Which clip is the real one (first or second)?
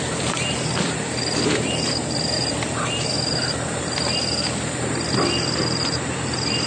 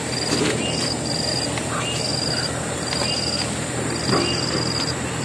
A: second